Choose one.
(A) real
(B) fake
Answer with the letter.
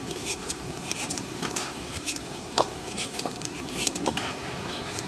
B